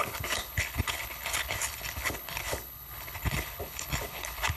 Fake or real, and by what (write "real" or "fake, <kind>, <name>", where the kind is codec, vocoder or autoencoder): fake, codec, HILCodec